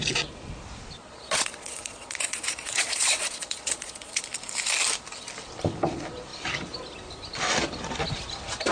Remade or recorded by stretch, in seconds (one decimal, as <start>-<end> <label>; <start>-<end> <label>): 0.0-1.0 recorded; 1.0-4.2 remade; 4.2-8.7 recorded